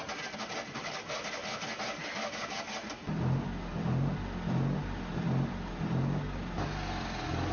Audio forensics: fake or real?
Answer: real